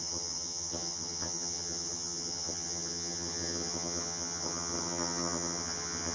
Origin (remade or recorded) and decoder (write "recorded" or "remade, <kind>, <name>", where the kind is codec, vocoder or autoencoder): remade, vocoder, HiFi-GAN